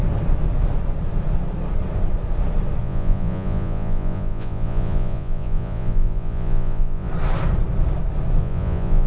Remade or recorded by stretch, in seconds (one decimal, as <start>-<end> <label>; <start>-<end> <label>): 0.0-2.8 recorded; 2.8-7.1 remade; 7.1-8.4 recorded; 8.4-9.1 remade